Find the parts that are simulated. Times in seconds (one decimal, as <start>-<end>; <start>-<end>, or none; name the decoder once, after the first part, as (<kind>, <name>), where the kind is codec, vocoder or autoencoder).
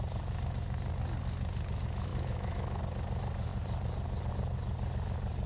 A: 2.1-2.8 (autoencoder, DAC-VAE)